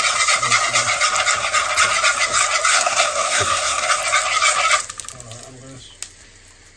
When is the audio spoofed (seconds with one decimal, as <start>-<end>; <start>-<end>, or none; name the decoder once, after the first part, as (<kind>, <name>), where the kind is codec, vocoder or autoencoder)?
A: 2.7-3.9 (codec, SNAC)

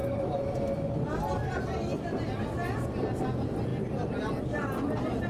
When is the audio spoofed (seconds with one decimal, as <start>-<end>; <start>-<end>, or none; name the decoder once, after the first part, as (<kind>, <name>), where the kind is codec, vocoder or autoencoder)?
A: none